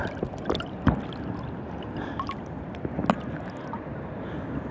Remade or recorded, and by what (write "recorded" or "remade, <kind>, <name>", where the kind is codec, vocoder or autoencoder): recorded